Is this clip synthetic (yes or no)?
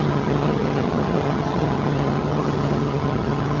yes